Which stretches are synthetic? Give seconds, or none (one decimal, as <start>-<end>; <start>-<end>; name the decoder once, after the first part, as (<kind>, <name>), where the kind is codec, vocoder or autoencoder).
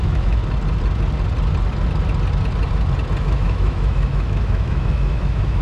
0.0-0.4 (autoencoder, DAC-VAE); 3.2-5.6